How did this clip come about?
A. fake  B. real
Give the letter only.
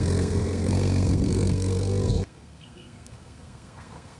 A